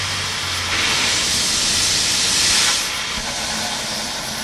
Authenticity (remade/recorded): recorded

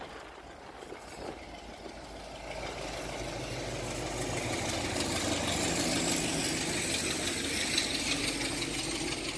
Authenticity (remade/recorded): recorded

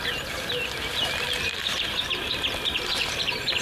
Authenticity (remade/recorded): recorded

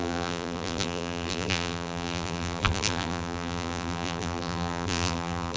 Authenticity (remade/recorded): remade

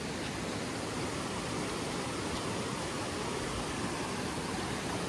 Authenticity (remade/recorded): recorded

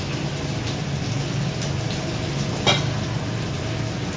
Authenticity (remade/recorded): recorded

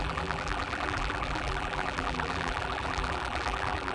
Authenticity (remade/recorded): remade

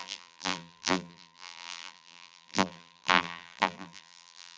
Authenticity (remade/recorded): remade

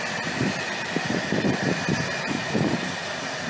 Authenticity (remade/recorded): remade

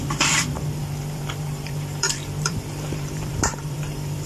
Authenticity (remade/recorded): remade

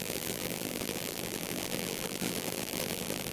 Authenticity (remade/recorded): remade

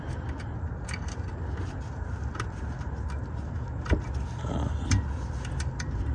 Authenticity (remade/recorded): recorded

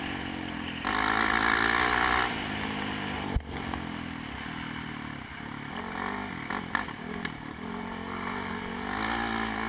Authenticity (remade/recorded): recorded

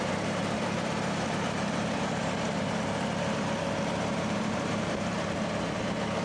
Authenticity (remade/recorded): remade